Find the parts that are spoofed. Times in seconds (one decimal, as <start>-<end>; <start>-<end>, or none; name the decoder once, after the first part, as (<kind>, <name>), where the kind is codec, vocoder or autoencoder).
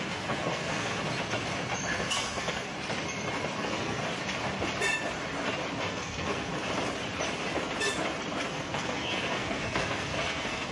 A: 0.0-1.0 (codec, SNAC); 2.1-2.7; 3.6-4.0; 5.8-6.5; 8.5-10.7